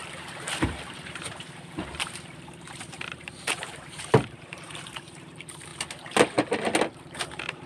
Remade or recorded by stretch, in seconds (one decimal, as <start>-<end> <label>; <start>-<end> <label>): 0.0-5.7 remade; 5.7-7.1 recorded; 7.1-7.7 remade